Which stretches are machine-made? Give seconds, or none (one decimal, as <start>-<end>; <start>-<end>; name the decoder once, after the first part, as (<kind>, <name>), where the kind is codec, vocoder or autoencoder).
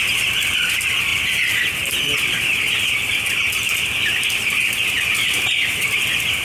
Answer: none